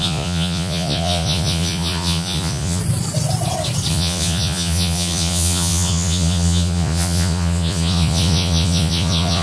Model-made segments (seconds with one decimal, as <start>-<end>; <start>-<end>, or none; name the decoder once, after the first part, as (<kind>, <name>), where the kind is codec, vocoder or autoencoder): 0.0-2.8 (vocoder, Vocos); 3.9-9.4